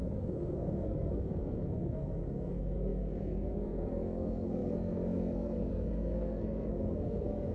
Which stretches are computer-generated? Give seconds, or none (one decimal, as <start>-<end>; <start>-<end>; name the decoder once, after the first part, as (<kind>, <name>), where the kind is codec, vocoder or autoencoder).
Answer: 0.0-7.5 (codec, SNAC)

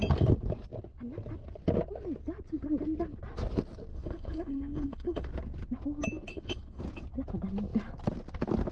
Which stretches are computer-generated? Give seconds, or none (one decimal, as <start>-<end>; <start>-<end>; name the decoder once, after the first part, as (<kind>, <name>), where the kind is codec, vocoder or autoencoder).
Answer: 3.9-5.3 (codec, HILCodec); 6.3-6.8

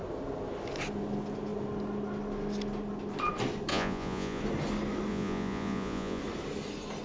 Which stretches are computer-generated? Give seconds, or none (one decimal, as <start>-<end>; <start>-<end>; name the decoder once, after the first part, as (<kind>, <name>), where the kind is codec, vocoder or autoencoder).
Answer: 3.7-4.4 (vocoder, Vocos); 5.1-6.2

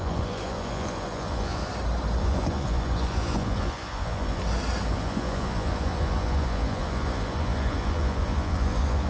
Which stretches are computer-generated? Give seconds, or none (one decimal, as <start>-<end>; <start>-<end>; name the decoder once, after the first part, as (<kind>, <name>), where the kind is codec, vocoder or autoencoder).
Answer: 0.0-1.6 (vocoder, Vocos); 2.2-4.4; 4.9-9.1

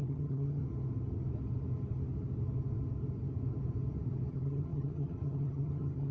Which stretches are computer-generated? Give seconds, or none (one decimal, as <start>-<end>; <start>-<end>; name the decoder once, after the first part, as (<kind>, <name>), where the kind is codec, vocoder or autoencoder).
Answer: 0.0-0.6 (vocoder, HiFi-GAN); 4.3-6.1

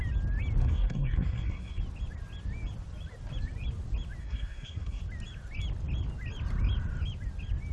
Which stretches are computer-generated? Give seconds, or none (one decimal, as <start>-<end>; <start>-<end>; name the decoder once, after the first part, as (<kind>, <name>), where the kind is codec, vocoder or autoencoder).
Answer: 0.6-1.8 (codec, SNAC); 4.2-5.0

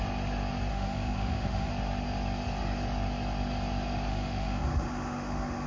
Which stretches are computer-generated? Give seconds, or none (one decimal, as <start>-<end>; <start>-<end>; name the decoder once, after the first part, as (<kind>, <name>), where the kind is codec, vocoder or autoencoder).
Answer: 0.7-1.7 (autoencoder, DAC-VAE); 4.1-5.7

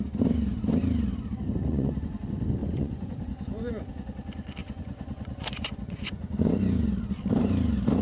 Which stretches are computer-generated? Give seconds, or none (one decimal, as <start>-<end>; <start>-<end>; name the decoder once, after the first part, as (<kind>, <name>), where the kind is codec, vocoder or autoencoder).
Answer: 1.7-2.2 (vocoder, Vocos); 2.6-3.9; 4.6-6.5